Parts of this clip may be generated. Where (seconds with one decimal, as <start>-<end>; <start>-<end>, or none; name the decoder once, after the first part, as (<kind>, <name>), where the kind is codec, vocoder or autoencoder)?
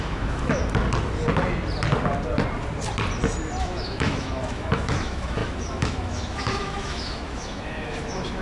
0.0-0.6 (autoencoder, DAC-VAE); 3.6-8.4